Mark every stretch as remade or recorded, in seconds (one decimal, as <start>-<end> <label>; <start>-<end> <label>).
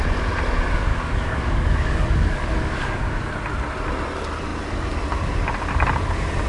0.0-0.9 recorded; 0.9-3.3 remade; 3.3-6.5 recorded